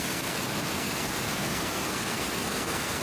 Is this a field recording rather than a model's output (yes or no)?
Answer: no